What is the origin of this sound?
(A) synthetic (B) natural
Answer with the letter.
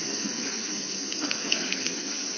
A